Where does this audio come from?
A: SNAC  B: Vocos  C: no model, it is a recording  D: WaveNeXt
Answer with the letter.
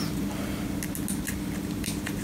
C